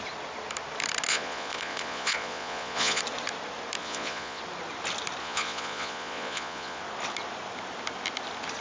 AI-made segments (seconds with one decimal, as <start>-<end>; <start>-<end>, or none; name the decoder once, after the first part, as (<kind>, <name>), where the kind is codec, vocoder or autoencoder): 1.1-3.0 (vocoder, Vocos); 3.8-4.4; 5.2-6.8